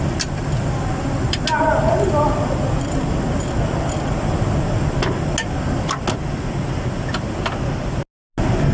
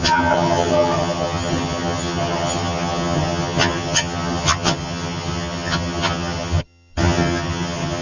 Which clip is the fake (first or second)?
second